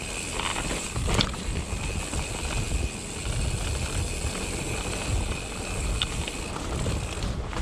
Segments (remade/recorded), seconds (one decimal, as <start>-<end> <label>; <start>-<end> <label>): 0.0-7.6 recorded